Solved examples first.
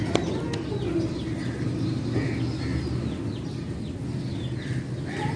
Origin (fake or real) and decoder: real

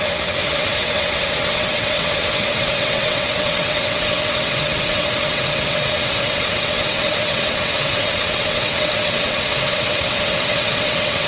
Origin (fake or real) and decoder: fake, vocoder, WaveNeXt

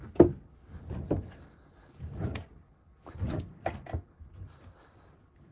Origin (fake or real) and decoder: real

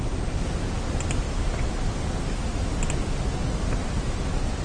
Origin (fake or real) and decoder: real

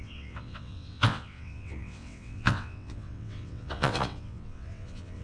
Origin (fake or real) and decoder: fake, vocoder, WaveNeXt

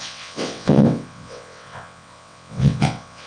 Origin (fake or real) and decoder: fake, vocoder, WaveNeXt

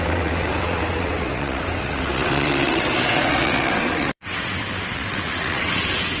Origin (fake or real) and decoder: fake, vocoder, WaveNeXt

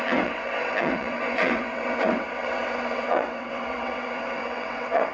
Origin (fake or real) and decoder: fake, vocoder, WaveNeXt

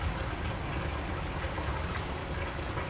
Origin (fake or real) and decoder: real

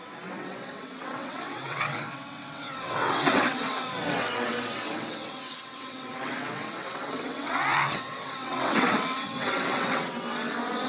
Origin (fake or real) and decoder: fake, vocoder, WaveNeXt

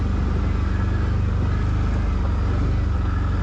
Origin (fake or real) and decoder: real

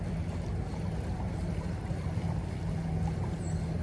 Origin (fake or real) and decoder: real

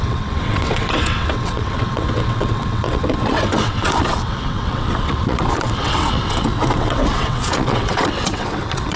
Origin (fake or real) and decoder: fake, vocoder, WaveNeXt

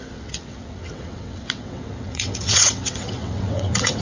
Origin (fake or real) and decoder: fake, vocoder, WaveNeXt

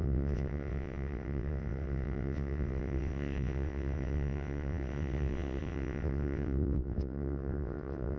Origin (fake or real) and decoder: fake, vocoder, WaveNeXt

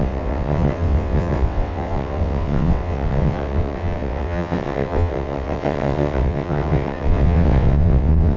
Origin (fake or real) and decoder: fake, vocoder, WaveNeXt